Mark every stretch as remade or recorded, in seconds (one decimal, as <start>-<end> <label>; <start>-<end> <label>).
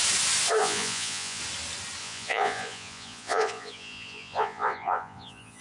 0.0-0.6 recorded; 0.6-1.4 remade; 1.4-2.0 recorded; 2.0-5.6 remade